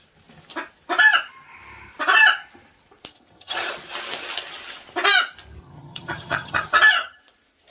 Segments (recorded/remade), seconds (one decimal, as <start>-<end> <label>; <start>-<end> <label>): 0.0-3.1 recorded; 3.1-3.7 remade; 3.7-5.6 recorded; 5.6-7.2 remade; 7.2-7.7 recorded